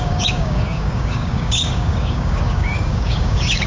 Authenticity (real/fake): fake